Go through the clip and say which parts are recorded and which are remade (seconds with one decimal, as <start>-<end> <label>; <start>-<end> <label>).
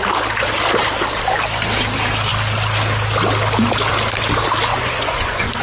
0.0-4.7 recorded; 4.7-5.6 remade